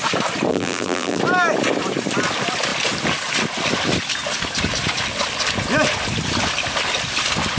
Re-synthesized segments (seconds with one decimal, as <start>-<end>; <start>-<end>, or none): 0.5-1.2